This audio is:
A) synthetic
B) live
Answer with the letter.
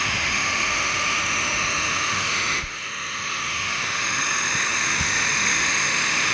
A